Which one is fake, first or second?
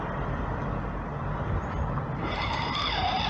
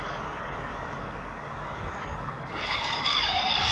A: second